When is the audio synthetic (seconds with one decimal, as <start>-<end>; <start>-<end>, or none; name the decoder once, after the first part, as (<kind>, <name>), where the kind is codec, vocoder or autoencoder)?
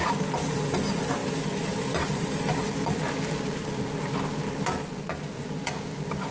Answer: none